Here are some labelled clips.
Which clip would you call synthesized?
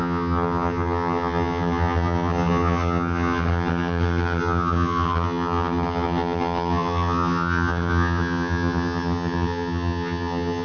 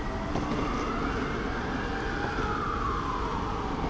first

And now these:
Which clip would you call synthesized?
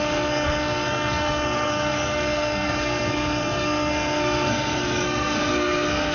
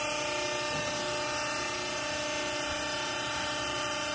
first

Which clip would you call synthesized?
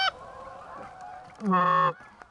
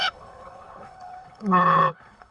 second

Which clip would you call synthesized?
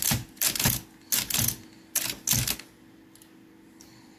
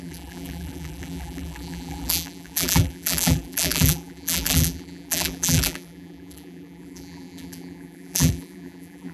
second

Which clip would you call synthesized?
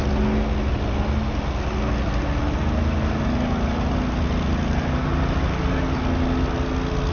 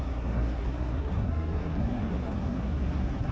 second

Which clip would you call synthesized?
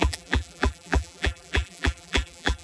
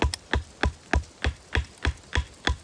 first